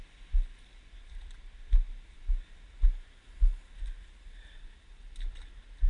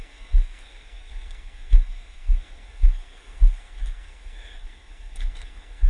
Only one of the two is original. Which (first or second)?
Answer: first